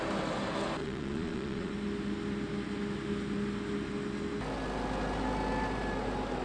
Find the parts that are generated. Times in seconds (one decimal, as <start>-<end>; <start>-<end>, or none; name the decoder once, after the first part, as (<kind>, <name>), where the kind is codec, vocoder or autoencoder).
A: 0.8-1.7 (vocoder, Vocos)